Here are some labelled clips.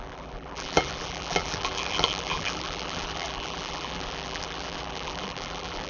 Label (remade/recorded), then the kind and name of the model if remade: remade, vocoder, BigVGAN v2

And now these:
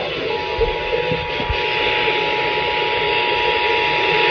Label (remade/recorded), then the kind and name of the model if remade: recorded